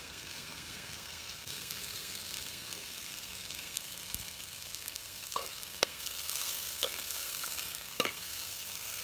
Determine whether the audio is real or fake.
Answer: fake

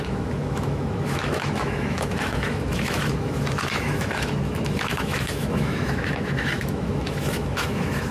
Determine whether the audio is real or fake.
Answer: fake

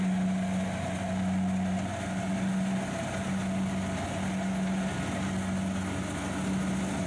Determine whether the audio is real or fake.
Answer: real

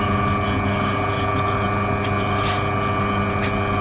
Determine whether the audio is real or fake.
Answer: real